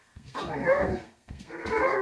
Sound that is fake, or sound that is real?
fake